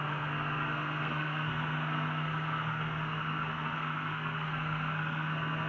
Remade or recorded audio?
remade